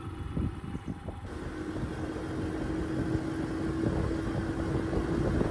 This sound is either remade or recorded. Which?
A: recorded